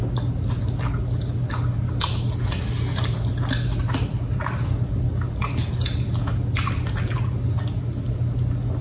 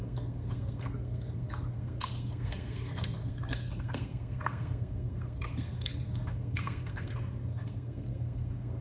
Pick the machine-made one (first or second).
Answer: second